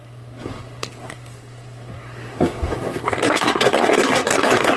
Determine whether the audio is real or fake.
fake